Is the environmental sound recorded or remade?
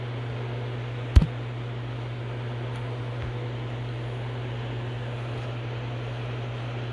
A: recorded